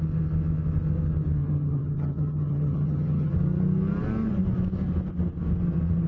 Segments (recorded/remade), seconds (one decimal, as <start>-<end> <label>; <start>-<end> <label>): 0.0-1.4 recorded; 1.4-3.3 remade; 3.3-6.1 recorded